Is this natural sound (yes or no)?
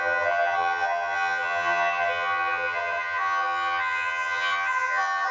no